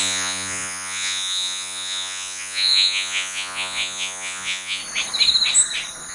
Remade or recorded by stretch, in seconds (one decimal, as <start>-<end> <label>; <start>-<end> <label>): 0.0-4.8 remade; 4.8-6.1 recorded